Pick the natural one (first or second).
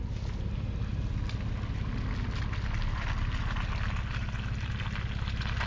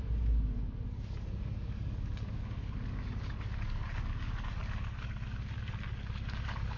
first